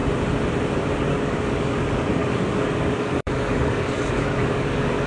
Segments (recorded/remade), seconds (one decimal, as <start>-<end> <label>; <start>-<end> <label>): 0.0-1.0 recorded; 1.0-5.1 remade